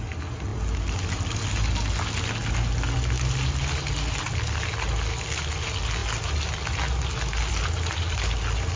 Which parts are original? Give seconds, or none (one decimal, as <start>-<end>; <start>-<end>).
0.0-8.8